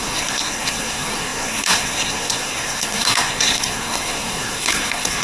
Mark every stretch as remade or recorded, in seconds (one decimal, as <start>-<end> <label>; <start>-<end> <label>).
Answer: 0.0-5.2 remade